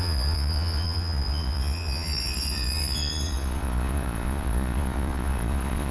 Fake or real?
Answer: fake